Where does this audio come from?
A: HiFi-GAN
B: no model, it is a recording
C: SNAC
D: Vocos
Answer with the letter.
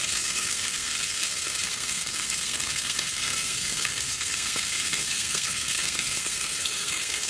C